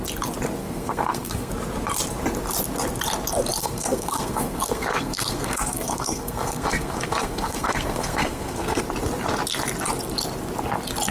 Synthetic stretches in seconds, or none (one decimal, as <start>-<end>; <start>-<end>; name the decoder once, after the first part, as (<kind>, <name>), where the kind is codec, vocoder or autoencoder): 0.6-1.5 (codec, SNAC); 3.6-8.8